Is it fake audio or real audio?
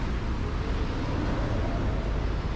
real